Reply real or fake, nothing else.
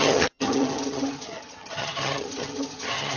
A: fake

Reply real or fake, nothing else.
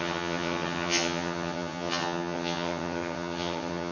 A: fake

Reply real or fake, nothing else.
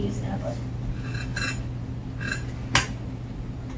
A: real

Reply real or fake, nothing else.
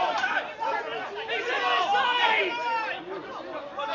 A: real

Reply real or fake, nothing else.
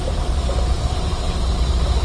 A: fake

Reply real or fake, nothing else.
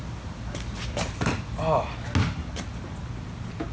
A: real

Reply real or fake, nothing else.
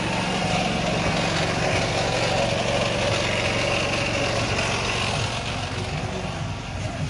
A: real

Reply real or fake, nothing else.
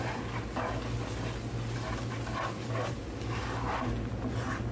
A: real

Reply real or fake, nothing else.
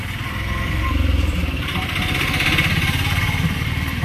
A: fake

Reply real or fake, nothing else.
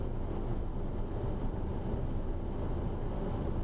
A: real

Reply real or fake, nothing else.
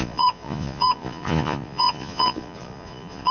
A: fake